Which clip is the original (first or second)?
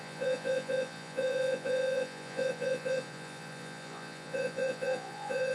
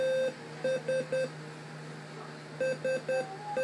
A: second